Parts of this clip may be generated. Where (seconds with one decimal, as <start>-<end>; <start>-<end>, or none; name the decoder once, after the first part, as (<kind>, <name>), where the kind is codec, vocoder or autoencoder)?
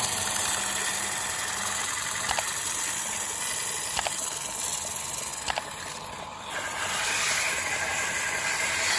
none